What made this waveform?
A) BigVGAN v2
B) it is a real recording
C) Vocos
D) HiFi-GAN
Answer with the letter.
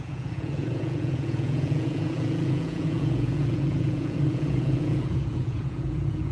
C